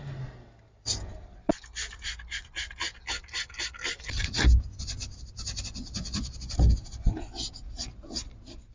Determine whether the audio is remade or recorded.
recorded